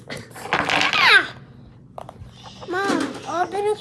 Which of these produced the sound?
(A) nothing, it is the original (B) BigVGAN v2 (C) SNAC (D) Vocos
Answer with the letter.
A